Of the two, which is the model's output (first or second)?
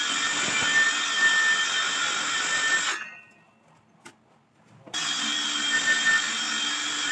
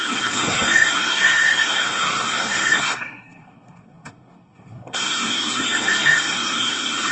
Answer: second